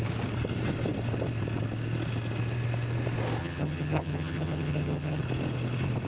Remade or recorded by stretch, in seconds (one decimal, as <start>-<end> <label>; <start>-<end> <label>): 0.0-3.4 recorded; 3.4-5.2 remade; 5.2-6.1 recorded